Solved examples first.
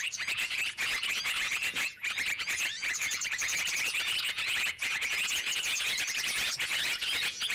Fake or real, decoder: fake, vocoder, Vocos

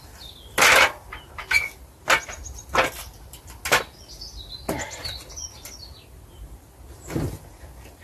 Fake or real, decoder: real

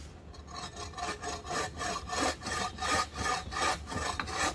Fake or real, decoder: real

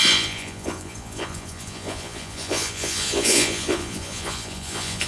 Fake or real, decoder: fake, vocoder, Vocos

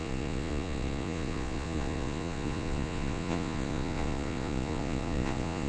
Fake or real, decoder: fake, vocoder, Vocos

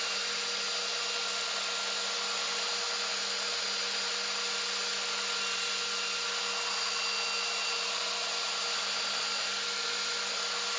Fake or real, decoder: real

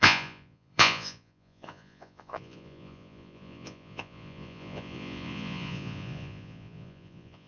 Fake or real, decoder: fake, vocoder, Vocos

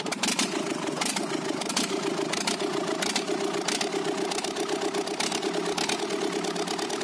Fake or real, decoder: real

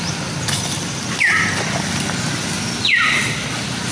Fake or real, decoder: real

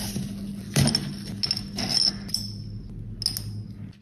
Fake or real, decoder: real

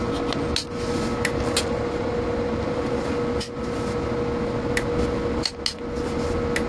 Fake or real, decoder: real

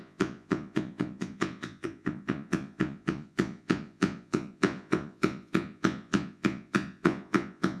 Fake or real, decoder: fake, vocoder, Vocos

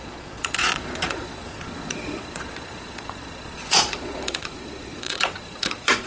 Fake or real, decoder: fake, vocoder, Vocos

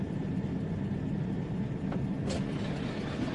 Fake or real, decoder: real